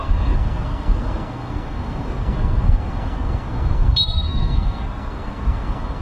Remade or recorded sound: remade